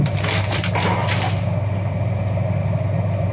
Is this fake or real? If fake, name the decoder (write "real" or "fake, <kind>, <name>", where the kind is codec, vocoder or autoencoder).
real